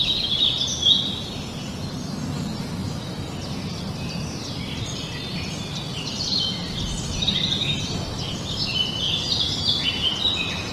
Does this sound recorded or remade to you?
recorded